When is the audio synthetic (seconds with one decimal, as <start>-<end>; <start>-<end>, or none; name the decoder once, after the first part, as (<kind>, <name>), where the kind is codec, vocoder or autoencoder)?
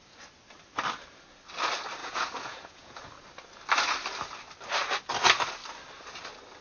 2.0-3.1 (vocoder, Vocos)